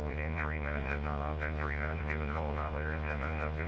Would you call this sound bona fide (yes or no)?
no